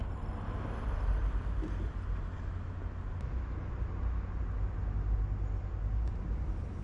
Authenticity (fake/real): real